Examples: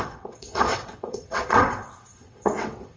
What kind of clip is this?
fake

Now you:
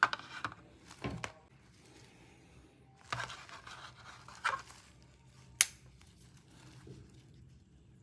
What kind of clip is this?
real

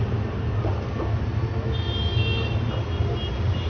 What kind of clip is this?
real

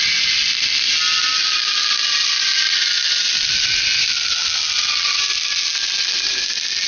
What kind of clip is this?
real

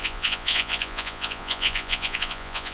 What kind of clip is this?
fake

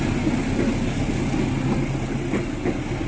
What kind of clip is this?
real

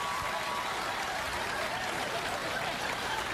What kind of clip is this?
real